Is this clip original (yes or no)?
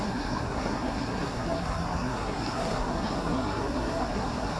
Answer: no